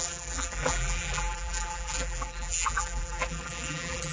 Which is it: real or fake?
fake